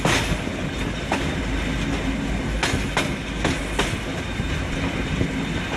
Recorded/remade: recorded